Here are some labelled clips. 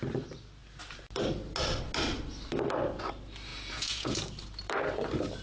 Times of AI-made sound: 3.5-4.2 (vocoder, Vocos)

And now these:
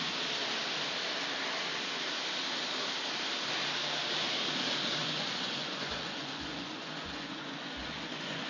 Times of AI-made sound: 5.0-8.5 (vocoder, Vocos)

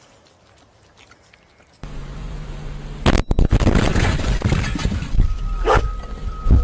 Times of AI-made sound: 2.0-2.7 (vocoder, Vocos); 3.9-4.4